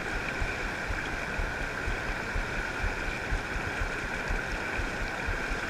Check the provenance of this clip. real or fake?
real